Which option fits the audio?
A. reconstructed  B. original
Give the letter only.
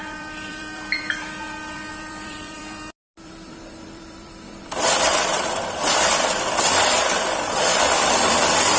A